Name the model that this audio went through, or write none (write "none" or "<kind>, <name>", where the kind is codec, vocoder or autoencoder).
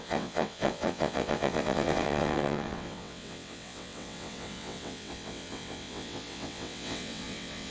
vocoder, WaveNeXt